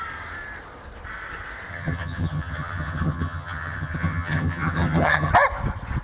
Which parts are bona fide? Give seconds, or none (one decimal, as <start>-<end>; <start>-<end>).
0.0-1.7; 5.3-6.0